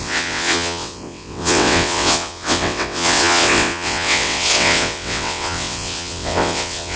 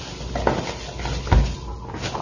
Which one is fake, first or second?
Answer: first